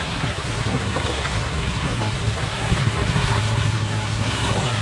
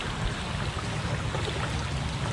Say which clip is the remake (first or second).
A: first